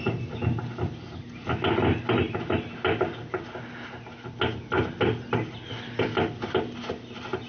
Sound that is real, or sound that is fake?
real